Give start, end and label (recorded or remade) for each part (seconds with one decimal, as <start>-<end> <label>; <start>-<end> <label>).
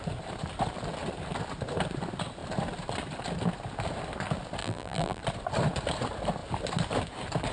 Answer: 0.0-4.6 recorded; 4.6-5.2 remade; 5.2-7.5 recorded